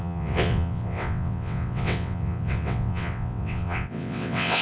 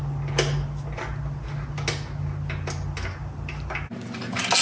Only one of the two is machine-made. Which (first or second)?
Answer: first